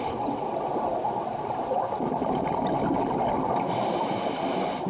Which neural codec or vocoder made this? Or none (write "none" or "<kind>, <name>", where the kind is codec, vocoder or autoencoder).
none